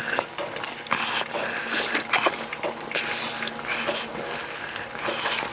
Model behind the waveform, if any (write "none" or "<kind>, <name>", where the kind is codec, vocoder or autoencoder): none